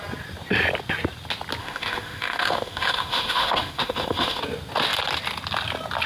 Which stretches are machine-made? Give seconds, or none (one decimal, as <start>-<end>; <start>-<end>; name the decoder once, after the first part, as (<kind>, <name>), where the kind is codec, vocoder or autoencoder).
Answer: 1.6-4.4 (autoencoder, DAC-VAE)